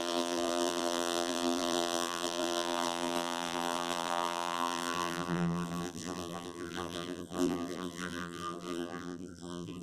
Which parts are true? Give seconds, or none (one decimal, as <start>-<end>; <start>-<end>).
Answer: none